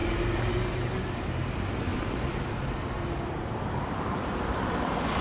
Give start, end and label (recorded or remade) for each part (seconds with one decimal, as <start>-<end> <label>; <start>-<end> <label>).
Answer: 0.0-1.9 recorded; 1.9-5.2 remade